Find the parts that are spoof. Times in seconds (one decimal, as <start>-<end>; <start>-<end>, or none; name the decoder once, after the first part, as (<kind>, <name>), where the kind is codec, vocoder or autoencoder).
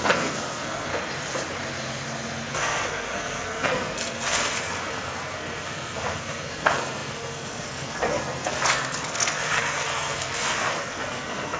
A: 0.0-0.9 (codec, SNAC); 2.5-11.6